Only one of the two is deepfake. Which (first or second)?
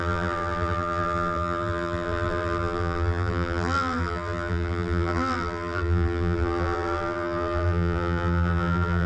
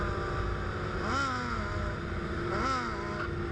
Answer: first